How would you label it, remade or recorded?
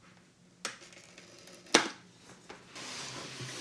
recorded